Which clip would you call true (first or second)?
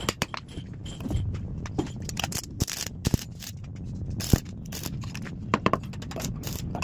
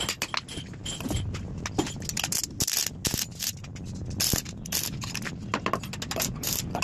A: second